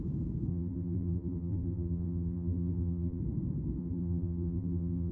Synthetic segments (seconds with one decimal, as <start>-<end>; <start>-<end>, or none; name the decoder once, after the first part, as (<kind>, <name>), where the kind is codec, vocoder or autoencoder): 0.5-3.2 (vocoder, BigVGAN v2); 3.8-5.1